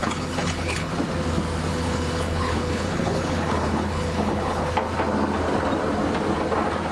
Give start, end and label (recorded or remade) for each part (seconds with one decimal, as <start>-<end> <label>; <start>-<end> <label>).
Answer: 0.0-0.9 remade; 0.9-1.7 recorded; 1.7-4.7 remade; 4.7-6.9 recorded